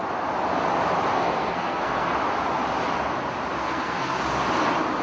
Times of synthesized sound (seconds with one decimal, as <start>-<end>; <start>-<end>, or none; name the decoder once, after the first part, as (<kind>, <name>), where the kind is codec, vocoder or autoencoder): 1.1-2.1 (codec, SNAC); 3.6-4.2